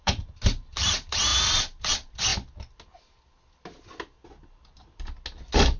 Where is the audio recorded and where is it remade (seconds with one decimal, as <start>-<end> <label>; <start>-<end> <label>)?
0.0-2.3 remade; 2.3-5.8 recorded